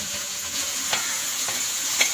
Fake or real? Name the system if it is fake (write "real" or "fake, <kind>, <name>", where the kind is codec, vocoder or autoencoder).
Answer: fake, vocoder, Vocos